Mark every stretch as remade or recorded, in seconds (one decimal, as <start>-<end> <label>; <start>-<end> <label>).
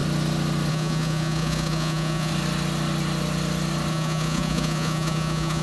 0.0-0.7 recorded; 0.7-2.3 remade; 2.3-3.9 recorded; 3.9-5.6 remade